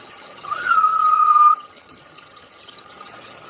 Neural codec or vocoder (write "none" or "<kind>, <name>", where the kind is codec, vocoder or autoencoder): vocoder, HiFi-GAN